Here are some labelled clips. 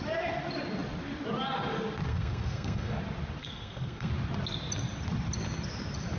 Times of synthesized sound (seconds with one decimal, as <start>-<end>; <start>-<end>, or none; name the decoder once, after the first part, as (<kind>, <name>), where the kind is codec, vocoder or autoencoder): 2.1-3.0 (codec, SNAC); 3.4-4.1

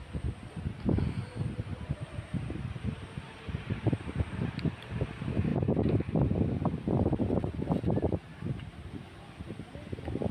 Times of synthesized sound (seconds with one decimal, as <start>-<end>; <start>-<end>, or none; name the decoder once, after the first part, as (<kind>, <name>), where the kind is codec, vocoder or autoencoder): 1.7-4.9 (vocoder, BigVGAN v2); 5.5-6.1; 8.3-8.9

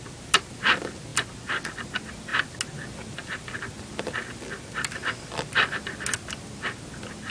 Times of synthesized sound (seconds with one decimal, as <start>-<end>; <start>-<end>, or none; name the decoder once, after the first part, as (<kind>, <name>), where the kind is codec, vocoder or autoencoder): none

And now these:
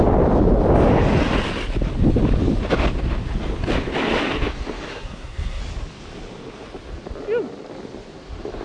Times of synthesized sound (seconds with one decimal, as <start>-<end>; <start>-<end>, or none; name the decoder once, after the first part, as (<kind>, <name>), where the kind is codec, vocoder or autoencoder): 4.9-5.6 (codec, SNAC)

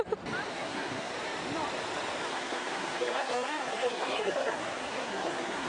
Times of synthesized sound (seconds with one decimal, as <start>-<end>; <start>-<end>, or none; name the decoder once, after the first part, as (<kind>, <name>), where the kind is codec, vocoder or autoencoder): 0.5-1.1 (codec, SNAC); 2.3-5.7